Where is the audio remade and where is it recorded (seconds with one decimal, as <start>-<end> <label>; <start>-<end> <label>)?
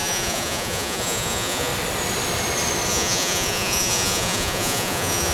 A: 0.0-1.7 remade; 1.7-2.9 recorded; 2.9-5.3 remade